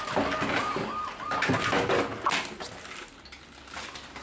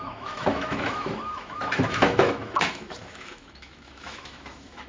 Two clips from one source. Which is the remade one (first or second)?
second